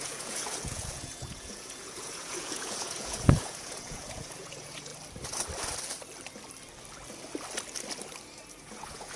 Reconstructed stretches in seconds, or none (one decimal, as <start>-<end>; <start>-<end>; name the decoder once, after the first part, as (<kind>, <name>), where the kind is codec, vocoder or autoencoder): 0.0-4.9 (vocoder, Vocos); 8.6-9.2